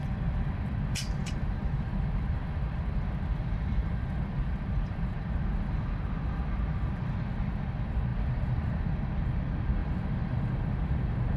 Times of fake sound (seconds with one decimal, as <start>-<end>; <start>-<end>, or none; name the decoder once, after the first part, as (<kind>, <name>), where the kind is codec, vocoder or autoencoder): 1.2-5.9 (vocoder, BigVGAN v2); 8.1-8.8; 9.8-10.5